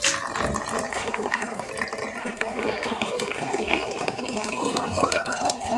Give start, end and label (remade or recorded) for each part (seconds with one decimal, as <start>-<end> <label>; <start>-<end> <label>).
0.0-0.9 recorded; 0.9-1.7 remade; 1.7-2.2 recorded; 2.2-5.8 remade